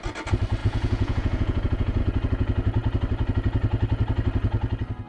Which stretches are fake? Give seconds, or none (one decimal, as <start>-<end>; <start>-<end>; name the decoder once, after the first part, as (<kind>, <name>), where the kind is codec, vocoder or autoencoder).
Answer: 0.6-2.0 (vocoder, Vocos)